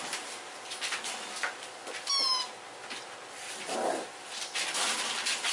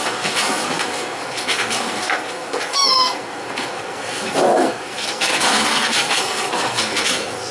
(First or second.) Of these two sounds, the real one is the first